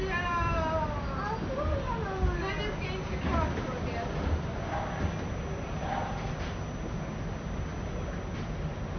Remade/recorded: recorded